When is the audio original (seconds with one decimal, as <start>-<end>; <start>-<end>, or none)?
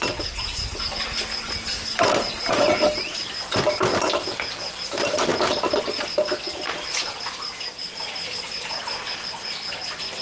0.0-10.2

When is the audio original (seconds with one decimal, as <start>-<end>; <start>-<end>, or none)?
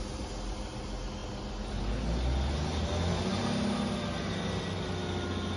0.0-5.6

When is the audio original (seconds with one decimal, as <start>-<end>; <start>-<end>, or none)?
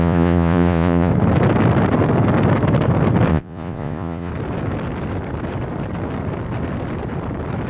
1.1-3.3; 4.3-7.7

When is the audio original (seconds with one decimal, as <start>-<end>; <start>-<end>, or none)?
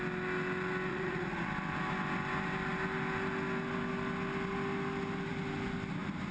0.0-0.9; 1.5-6.3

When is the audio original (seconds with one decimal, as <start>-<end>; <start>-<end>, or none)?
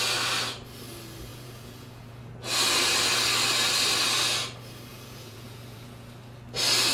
0.0-1.3; 2.2-4.9; 6.1-6.9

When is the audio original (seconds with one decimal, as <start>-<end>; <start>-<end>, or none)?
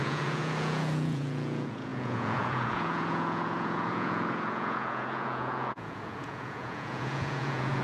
none